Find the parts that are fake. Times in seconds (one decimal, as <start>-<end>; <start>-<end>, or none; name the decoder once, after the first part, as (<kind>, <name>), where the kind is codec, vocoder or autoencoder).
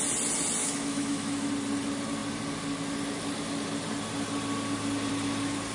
0.6-1.5 (autoencoder, DAC-VAE)